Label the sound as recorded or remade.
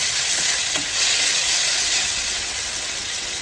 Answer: remade